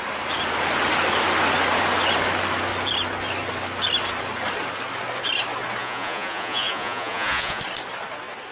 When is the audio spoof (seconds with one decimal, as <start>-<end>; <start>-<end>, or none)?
5.8-7.6